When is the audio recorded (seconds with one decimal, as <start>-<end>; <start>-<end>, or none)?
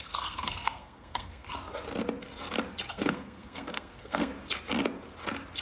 1.5-2.9; 4.3-5.6